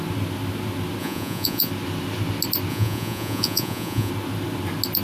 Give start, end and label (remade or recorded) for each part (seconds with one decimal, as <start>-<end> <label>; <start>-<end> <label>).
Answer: 0.0-1.0 recorded; 1.0-1.7 remade; 1.7-2.7 recorded; 2.7-4.1 remade; 4.1-5.0 recorded